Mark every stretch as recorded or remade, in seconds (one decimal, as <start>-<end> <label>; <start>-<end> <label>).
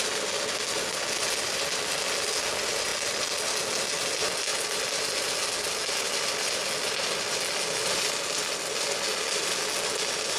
0.0-10.4 recorded